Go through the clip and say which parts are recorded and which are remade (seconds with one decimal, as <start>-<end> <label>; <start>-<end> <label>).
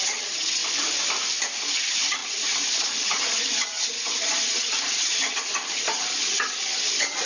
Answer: 0.0-0.6 remade; 0.6-1.7 recorded; 1.7-7.3 remade